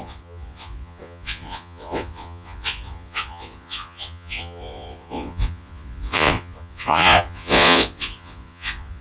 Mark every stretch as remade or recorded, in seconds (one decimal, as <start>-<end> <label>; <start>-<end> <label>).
0.0-9.0 remade